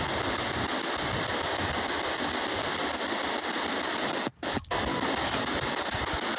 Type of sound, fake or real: real